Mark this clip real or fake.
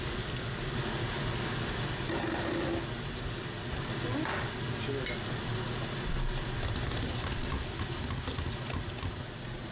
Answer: real